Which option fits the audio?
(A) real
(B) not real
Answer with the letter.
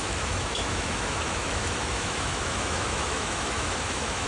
B